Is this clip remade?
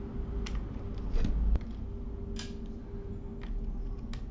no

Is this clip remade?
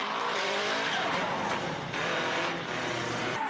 no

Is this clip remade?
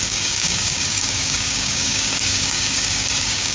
yes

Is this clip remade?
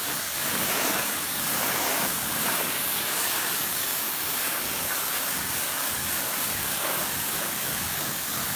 yes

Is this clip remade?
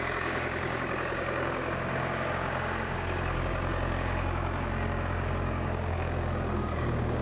yes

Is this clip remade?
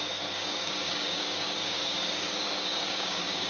yes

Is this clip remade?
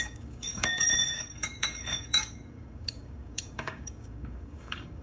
yes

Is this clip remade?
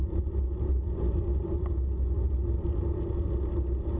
no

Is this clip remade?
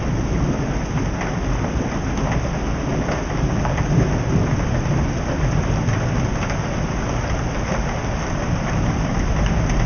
no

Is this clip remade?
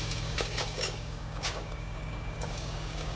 yes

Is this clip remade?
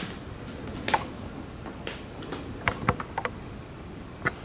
no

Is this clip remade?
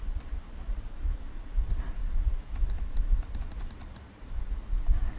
no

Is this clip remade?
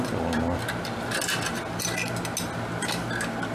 no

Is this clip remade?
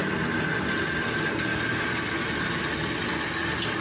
no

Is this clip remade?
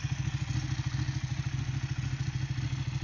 no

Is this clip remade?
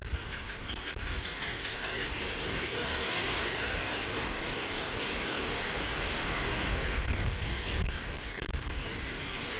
yes